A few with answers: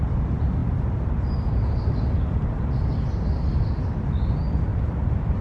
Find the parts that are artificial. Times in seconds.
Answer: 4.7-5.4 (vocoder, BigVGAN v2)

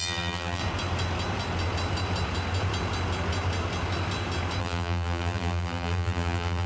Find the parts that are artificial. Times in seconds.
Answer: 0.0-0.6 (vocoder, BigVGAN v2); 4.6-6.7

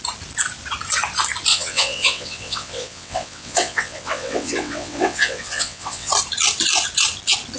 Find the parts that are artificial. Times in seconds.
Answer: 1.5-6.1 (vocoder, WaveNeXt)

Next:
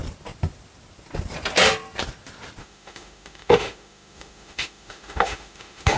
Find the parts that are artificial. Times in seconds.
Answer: 2.6-6.0 (autoencoder, DAC-VAE)

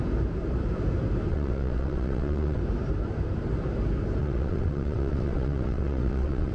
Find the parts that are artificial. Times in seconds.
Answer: 1.3-2.6 (vocoder, WaveNeXt); 4.2-6.5

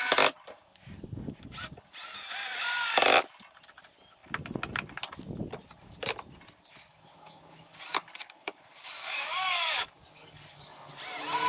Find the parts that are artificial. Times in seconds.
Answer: 6.9-10.9 (codec, DAC)

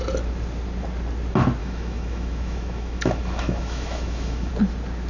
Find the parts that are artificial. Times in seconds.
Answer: 1.6-4.5 (autoencoder, DAC-VAE)